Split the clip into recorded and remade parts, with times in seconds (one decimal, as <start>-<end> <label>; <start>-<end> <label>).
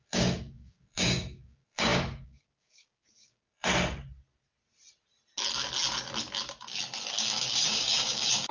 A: 0.0-3.7 remade; 3.7-7.1 recorded; 7.1-8.5 remade